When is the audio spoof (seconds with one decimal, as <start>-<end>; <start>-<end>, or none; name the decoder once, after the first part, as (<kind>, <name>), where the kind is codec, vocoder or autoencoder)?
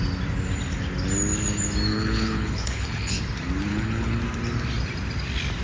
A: 1.9-3.2 (codec, HILCodec); 3.7-4.2